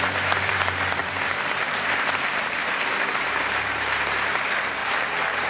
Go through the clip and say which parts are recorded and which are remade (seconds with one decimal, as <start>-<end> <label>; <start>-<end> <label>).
0.0-4.8 remade; 4.8-5.5 recorded